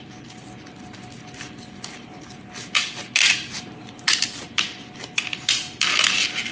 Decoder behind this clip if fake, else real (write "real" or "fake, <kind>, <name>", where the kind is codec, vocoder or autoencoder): real